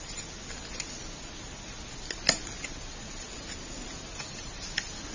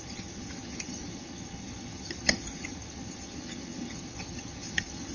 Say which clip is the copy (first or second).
second